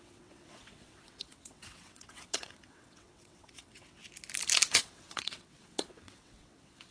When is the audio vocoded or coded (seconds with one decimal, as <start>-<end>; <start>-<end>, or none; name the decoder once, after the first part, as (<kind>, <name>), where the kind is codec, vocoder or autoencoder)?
0.0-4.0 (vocoder, WaveNeXt); 4.7-6.9